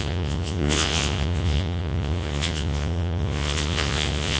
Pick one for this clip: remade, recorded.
remade